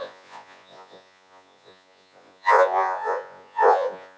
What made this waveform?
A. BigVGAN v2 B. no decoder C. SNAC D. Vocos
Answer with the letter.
D